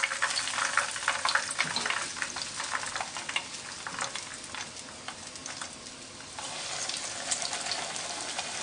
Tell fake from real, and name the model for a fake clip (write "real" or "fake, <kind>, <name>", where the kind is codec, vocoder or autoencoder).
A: real